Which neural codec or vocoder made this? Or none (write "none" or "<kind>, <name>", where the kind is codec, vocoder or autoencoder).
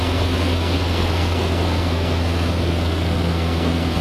codec, SNAC